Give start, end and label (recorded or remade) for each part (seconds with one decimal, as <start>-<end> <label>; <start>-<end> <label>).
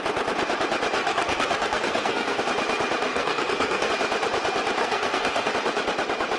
0.0-1.0 recorded; 1.0-2.4 remade; 2.4-3.1 recorded; 3.1-3.9 remade; 3.9-4.8 recorded; 4.8-5.5 remade; 5.5-6.4 recorded